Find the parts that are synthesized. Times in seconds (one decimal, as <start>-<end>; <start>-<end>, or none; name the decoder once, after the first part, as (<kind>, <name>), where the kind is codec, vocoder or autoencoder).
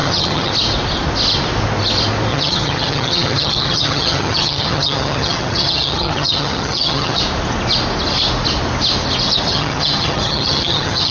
0.0-0.5 (vocoder, HiFi-GAN); 2.3-7.2; 9.5-11.1